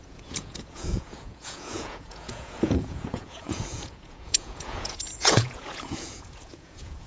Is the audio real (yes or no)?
no